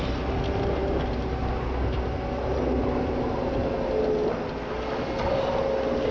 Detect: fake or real real